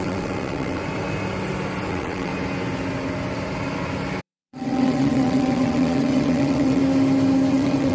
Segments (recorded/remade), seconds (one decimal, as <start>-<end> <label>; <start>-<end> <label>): 0.0-0.8 remade; 0.8-1.9 recorded; 1.9-2.3 remade; 2.3-4.2 recorded; 4.2-6.8 remade; 6.8-7.5 recorded; 7.5-7.9 remade